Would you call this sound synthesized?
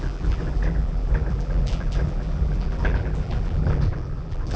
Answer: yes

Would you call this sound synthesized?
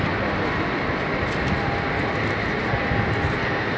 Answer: no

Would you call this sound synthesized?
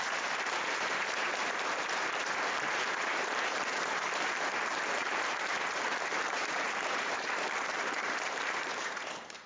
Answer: yes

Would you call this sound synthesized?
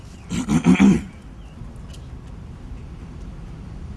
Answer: no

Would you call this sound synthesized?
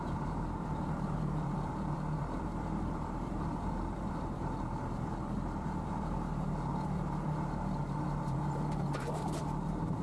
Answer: yes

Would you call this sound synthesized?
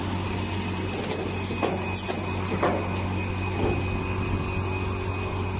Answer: no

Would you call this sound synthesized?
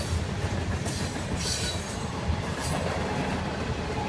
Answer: yes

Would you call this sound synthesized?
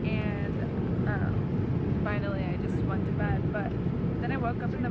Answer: no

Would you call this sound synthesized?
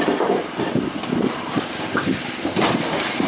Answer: yes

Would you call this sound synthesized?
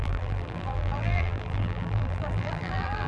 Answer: yes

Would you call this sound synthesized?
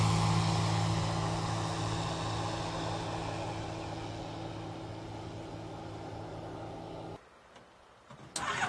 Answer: no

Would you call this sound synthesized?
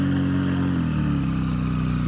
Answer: no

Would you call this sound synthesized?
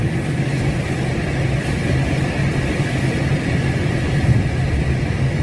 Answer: yes